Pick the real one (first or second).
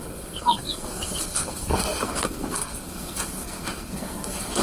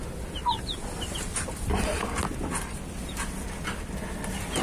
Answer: second